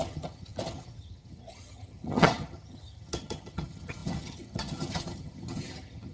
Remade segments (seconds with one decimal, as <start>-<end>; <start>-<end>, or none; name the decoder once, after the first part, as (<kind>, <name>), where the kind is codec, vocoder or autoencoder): 0.0-6.1 (vocoder, HiFi-GAN)